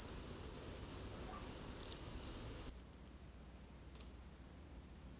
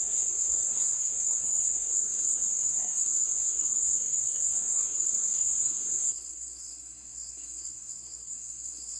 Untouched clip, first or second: first